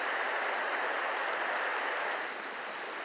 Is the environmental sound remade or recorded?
recorded